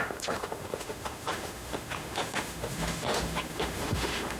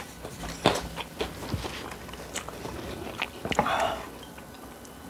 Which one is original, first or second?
second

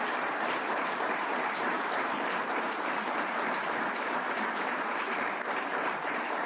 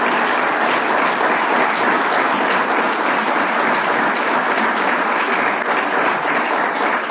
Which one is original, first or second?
second